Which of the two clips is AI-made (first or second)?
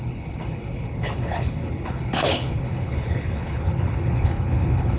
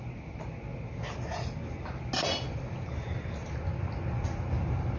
first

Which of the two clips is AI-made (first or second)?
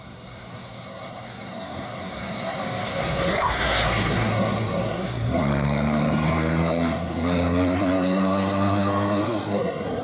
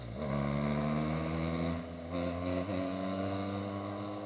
first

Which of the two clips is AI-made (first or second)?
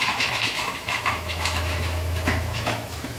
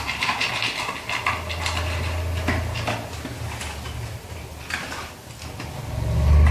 first